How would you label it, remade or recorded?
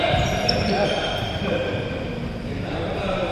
remade